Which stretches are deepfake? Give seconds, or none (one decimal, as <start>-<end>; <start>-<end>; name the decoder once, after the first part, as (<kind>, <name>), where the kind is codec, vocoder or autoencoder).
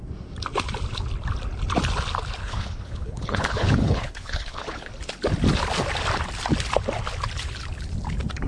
2.4-4.9 (codec, HILCodec)